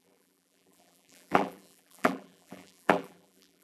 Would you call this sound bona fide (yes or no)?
no